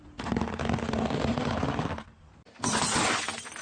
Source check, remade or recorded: recorded